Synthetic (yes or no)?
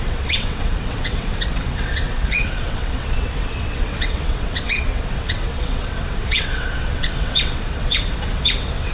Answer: yes